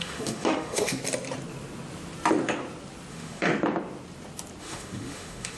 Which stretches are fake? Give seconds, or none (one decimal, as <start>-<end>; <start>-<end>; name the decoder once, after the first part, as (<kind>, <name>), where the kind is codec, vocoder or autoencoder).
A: 0.0-1.0 (autoencoder, DAC-VAE); 3.1-3.5; 4.6-5.6